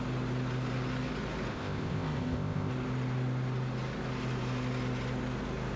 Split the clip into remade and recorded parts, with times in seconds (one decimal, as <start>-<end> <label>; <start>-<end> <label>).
0.0-1.5 recorded; 1.5-2.7 remade; 2.7-5.8 recorded